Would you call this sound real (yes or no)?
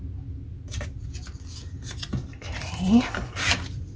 yes